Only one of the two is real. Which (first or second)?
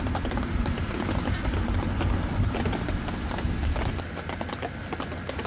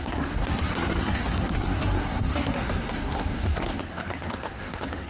first